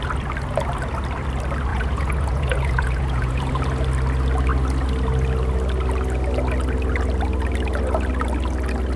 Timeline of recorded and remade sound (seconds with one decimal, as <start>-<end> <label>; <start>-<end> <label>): 0.0-1.7 recorded; 1.7-3.4 remade; 3.4-9.0 recorded